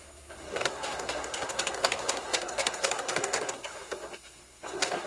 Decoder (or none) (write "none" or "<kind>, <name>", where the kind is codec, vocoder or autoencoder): codec, SNAC